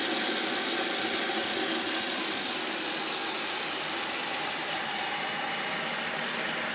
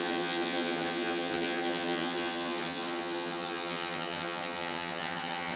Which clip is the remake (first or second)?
second